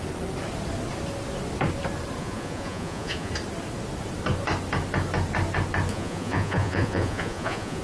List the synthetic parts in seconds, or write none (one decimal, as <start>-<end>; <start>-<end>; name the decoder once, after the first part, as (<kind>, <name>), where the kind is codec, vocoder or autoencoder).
2.2-3.3 (vocoder, Vocos); 5.9-7.8